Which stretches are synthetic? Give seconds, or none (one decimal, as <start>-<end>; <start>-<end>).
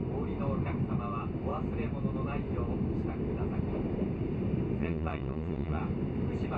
4.8-5.8